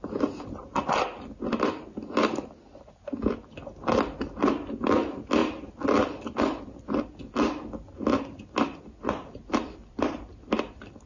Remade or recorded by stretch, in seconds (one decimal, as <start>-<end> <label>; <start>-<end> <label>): 0.0-9.5 recorded; 9.5-10.7 remade; 10.7-11.1 recorded